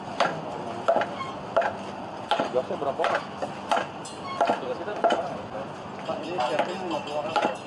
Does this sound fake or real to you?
real